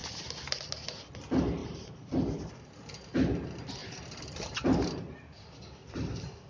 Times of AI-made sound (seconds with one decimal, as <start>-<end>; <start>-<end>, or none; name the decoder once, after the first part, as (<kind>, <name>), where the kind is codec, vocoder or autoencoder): 1.6-2.5 (vocoder, BigVGAN v2); 3.8-6.5